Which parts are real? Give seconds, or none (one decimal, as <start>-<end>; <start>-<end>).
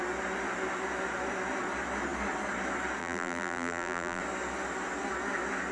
0.0-3.0; 4.2-5.7